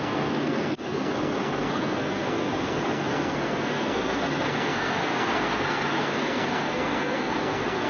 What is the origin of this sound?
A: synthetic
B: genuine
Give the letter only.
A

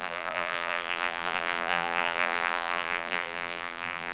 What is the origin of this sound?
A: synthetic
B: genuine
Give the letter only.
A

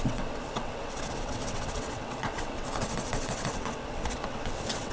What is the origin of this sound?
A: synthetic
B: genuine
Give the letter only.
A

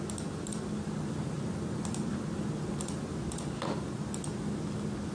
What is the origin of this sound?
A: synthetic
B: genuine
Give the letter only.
B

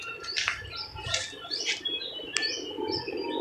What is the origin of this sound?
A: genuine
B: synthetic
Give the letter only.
A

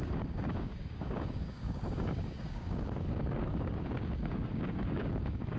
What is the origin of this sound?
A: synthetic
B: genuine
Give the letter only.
A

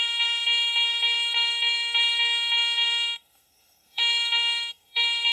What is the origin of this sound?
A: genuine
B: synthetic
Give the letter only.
B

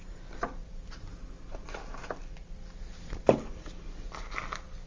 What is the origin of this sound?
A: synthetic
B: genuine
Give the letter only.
B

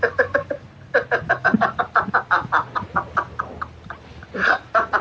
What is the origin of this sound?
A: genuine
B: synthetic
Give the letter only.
A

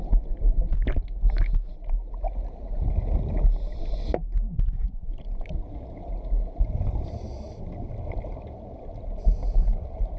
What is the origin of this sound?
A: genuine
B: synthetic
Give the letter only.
A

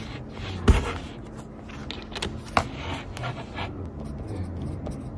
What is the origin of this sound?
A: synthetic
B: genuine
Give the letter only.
B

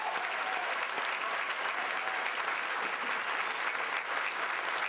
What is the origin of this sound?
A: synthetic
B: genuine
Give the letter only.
B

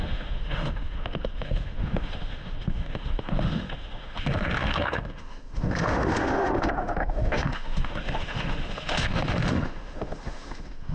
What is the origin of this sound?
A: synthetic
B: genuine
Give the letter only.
A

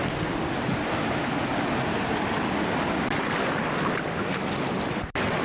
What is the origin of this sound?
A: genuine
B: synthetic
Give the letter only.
A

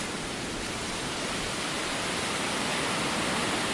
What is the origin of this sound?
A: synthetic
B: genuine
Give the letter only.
B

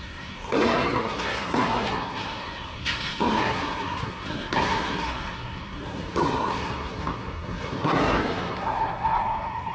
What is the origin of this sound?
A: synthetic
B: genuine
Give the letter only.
A